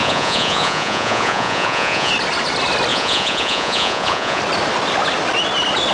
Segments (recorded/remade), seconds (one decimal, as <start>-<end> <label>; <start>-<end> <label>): 0.0-2.1 remade; 2.1-2.9 recorded; 2.9-4.4 remade; 4.4-5.9 recorded